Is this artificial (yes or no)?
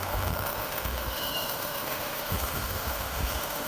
yes